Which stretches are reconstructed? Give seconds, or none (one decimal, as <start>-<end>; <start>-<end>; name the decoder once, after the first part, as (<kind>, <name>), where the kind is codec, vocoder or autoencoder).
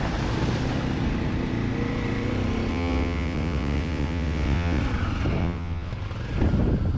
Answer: 2.7-4.8 (vocoder, WaveNeXt); 5.4-5.9